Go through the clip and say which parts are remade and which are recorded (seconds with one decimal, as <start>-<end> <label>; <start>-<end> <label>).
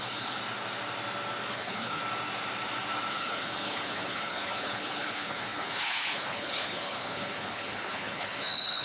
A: 0.0-0.4 remade; 0.4-1.5 recorded; 1.5-2.0 remade; 2.0-3.1 recorded; 3.1-8.8 remade